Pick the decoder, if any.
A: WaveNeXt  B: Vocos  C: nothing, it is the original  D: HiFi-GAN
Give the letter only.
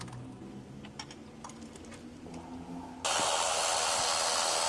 C